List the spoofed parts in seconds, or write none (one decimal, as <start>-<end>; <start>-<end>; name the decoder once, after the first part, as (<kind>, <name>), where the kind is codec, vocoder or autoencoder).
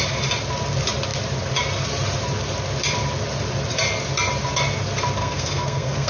5.2-6.1 (codec, SNAC)